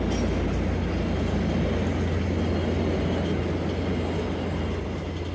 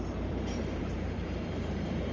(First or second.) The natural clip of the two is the first